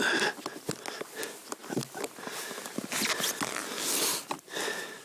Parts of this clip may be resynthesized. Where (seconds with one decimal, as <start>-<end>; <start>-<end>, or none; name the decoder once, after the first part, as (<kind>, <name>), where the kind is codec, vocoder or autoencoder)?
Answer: none